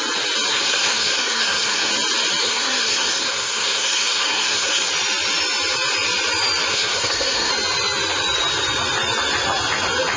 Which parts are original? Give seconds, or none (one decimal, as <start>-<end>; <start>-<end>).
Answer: 0.0-0.5; 1.9-2.4; 4.9-6.7; 7.5-10.2